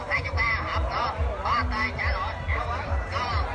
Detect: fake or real fake